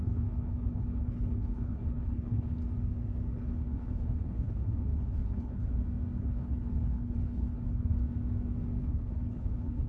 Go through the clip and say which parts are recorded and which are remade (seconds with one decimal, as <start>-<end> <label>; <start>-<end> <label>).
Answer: 0.0-2.6 remade; 2.6-3.3 recorded; 3.3-5.7 remade; 5.7-6.2 recorded; 6.2-7.9 remade; 7.9-8.8 recorded; 8.8-9.9 remade